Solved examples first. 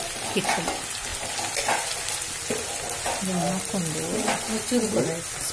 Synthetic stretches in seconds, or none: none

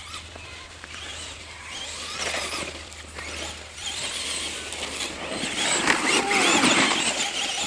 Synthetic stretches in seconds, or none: 1.1-5.7 (vocoder, BigVGAN v2)

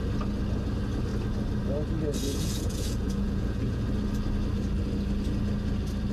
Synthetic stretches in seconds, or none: 2.3-3.8 (vocoder, Vocos)

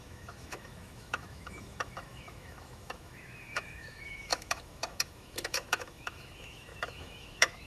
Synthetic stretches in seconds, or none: 0.0-7.7 (autoencoder, DAC-VAE)